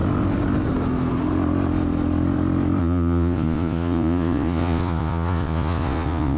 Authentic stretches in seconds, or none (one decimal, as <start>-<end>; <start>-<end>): 0.0-2.8

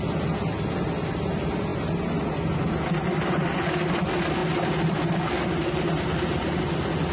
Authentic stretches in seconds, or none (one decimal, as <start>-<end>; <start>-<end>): 0.0-4.4; 6.6-7.1